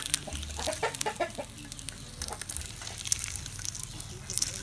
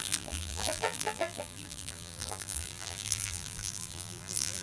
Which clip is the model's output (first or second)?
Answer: second